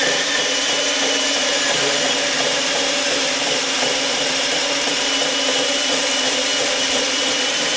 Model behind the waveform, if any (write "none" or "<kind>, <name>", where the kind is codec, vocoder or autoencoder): vocoder, BigVGAN v2